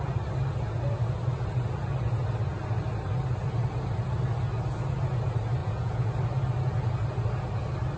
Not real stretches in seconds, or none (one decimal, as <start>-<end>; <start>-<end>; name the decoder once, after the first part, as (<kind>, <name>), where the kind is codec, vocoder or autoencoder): 5.6-6.1 (vocoder, Vocos)